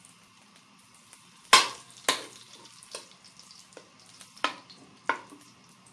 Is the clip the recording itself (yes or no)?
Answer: yes